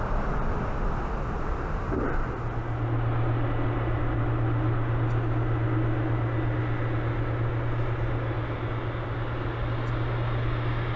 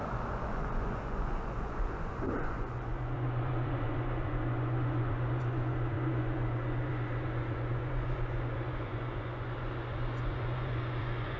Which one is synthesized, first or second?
second